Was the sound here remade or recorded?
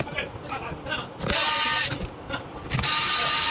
recorded